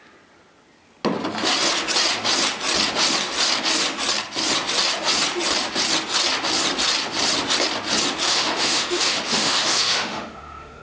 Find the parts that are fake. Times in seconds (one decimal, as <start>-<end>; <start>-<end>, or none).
8.2-10.8